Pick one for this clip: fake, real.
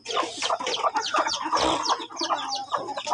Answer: real